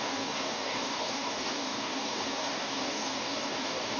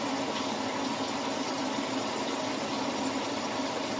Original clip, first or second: second